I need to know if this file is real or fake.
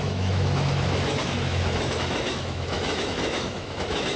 fake